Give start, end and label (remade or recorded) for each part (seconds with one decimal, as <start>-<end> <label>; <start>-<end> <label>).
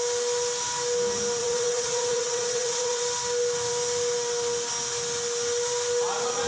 0.0-1.4 recorded; 1.4-3.0 remade; 3.0-6.5 recorded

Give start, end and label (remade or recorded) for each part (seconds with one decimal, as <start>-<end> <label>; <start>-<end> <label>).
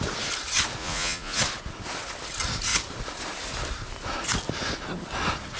0.0-0.8 recorded; 0.8-1.4 remade; 1.4-5.6 recorded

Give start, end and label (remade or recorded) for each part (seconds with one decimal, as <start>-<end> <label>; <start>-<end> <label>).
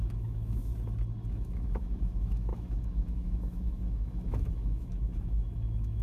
0.0-0.7 remade; 0.7-1.3 recorded; 1.3-6.0 remade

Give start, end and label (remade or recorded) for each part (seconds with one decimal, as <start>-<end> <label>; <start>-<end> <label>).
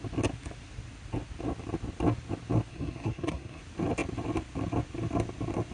0.0-2.7 recorded; 2.7-3.6 remade; 3.6-5.7 recorded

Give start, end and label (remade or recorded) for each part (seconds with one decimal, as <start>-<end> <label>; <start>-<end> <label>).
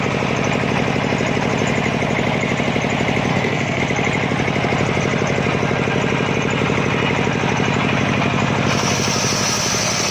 0.0-3.3 recorded; 3.3-3.8 remade; 3.8-10.1 recorded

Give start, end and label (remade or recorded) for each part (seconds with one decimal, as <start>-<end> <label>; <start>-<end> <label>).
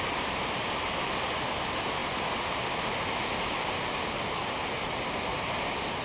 0.0-6.0 recorded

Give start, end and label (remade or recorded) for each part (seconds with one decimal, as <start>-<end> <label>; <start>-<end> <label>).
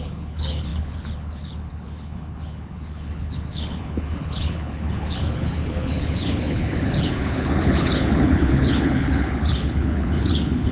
0.0-10.7 remade